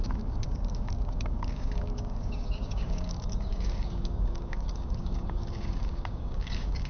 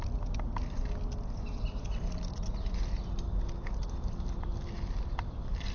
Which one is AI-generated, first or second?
first